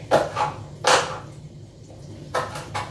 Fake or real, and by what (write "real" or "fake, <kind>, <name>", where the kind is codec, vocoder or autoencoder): real